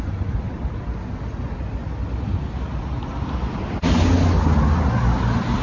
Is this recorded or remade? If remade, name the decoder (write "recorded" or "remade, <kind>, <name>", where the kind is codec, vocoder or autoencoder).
recorded